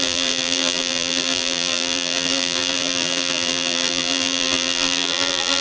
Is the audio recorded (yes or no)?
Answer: no